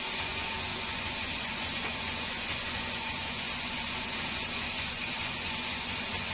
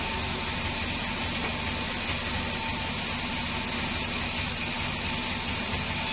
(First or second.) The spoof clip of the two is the first